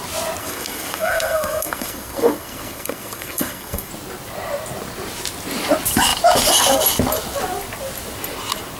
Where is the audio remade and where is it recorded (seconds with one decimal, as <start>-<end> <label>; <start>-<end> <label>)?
0.0-0.4 recorded; 0.4-3.9 remade; 3.9-8.8 recorded

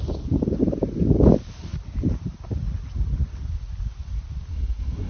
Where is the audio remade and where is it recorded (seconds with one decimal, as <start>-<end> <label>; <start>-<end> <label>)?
0.0-4.5 recorded; 4.5-5.1 remade

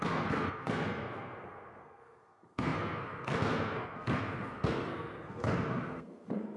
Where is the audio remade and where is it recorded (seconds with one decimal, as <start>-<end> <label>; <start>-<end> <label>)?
0.0-6.6 remade

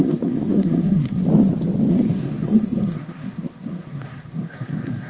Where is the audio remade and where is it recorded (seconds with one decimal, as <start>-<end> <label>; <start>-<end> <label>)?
0.0-1.2 remade; 1.2-1.9 recorded; 1.9-5.1 remade

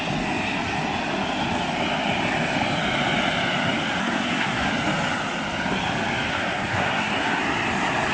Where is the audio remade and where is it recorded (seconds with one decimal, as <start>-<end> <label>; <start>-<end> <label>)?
0.0-4.0 recorded; 4.0-4.7 remade; 4.7-6.3 recorded; 6.3-7.4 remade; 7.4-8.1 recorded

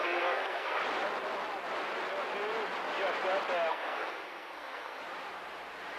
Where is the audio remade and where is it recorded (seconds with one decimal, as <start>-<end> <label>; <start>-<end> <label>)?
0.0-0.8 remade; 0.8-3.7 recorded; 3.7-5.0 remade; 5.0-6.0 recorded

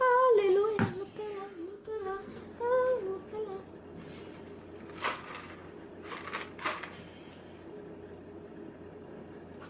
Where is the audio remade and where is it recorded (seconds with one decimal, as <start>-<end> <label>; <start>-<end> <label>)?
0.0-1.7 recorded; 1.7-2.4 remade; 2.4-9.7 recorded

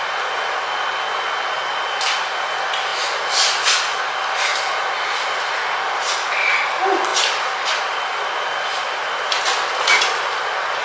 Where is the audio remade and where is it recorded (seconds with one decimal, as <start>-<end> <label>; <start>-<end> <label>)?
0.0-10.8 recorded